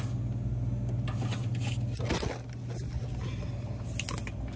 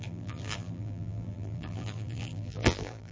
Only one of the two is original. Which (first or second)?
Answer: first